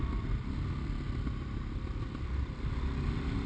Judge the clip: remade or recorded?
recorded